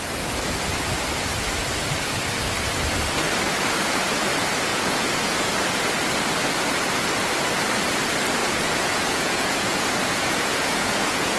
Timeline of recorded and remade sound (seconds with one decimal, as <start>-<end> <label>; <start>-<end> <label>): 0.0-4.7 recorded; 4.7-5.5 remade; 5.5-8.4 recorded; 8.4-11.4 remade

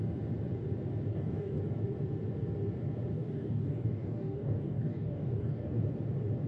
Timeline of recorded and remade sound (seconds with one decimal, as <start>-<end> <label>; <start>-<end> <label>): 0.0-1.1 recorded; 1.1-1.6 remade; 1.6-3.1 recorded; 3.1-5.8 remade; 5.8-6.5 recorded